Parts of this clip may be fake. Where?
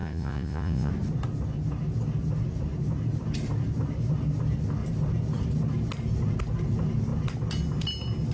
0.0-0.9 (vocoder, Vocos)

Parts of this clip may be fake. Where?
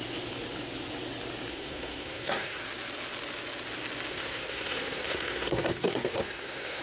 1.5-2.6 (codec, SNAC); 4.1-6.8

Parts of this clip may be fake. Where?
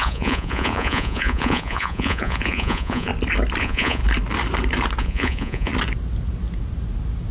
0.0-3.1 (vocoder, Vocos); 3.6-4.0; 5.0-5.7